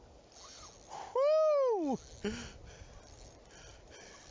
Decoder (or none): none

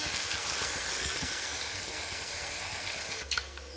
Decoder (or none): codec, SNAC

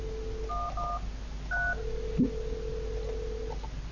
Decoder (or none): none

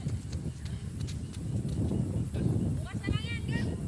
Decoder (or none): none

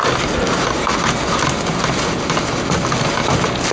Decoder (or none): none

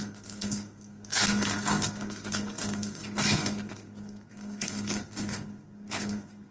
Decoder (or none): codec, SNAC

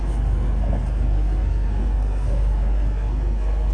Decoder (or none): codec, SNAC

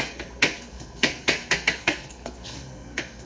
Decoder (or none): codec, SNAC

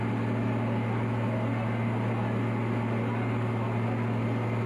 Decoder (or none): none